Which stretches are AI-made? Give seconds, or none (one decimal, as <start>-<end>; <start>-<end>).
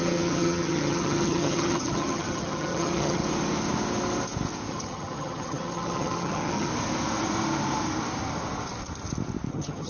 0.0-3.2; 4.7-6.7; 9.5-9.9